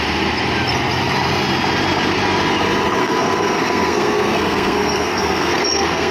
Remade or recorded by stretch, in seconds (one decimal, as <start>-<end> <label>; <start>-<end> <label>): 0.0-3.0 recorded; 3.0-6.1 remade